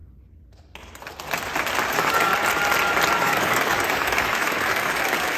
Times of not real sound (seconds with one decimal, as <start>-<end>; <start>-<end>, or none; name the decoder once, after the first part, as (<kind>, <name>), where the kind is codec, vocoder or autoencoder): 1.9-2.3 (codec, DAC); 3.2-5.4